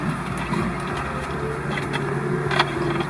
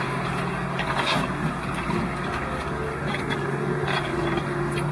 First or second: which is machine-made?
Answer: second